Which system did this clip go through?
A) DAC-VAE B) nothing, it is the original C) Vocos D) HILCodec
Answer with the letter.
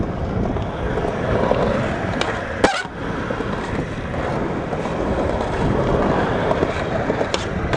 B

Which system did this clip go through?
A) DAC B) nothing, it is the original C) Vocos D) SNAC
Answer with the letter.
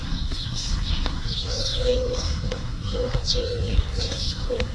D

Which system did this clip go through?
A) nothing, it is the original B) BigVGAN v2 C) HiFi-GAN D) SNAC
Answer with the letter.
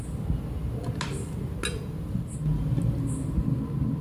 A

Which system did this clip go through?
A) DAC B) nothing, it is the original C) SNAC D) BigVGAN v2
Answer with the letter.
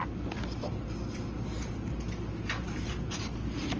B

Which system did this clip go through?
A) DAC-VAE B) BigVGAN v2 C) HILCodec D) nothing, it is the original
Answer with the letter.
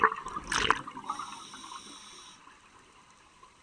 D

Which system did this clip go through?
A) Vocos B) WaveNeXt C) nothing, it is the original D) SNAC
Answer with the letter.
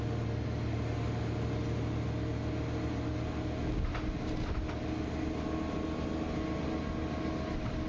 C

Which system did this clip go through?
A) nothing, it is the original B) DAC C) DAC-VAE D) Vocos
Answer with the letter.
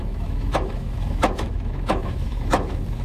C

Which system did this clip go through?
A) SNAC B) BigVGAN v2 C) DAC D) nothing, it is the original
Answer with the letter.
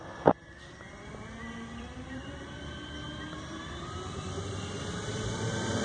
B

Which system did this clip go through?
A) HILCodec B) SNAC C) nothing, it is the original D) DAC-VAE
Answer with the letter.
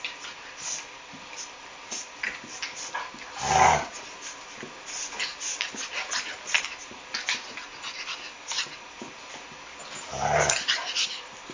C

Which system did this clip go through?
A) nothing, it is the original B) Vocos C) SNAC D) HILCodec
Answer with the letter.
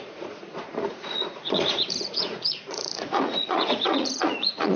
B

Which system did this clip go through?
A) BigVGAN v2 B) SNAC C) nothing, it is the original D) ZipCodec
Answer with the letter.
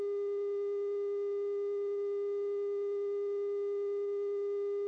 C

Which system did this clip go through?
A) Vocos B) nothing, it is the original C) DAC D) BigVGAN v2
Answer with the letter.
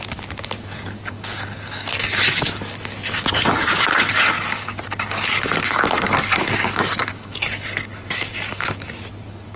C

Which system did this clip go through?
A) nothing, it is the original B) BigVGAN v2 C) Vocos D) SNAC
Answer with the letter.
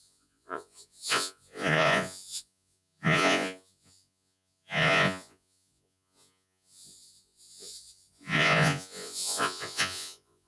C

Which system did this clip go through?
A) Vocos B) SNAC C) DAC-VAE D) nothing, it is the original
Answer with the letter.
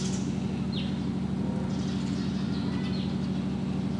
D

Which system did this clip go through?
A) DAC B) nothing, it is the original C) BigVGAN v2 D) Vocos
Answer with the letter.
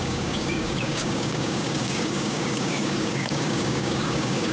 A